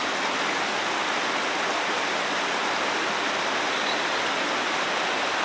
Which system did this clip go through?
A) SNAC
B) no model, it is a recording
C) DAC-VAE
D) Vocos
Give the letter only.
B